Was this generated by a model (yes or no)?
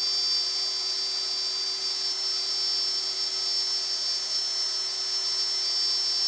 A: no